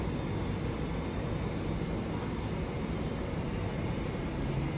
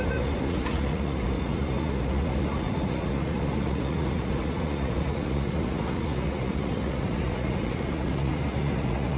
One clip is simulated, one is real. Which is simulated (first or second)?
second